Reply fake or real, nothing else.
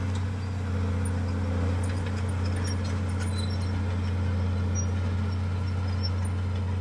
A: real